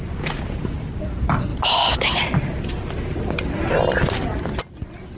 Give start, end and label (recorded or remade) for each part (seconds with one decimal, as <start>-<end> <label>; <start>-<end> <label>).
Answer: 0.0-5.2 recorded